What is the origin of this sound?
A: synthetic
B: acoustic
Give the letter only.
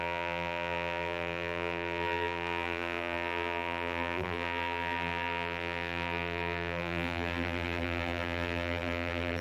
A